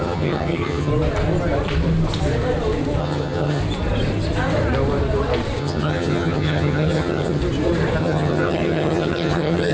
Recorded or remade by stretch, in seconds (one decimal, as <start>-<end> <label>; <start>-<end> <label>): 0.0-0.9 remade; 0.9-3.0 recorded; 3.0-3.6 remade; 3.6-5.6 recorded; 5.6-7.4 remade; 7.4-8.0 recorded; 8.0-9.7 remade